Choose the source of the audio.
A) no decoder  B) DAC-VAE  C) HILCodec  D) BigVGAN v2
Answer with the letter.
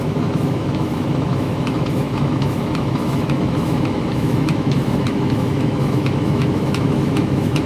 B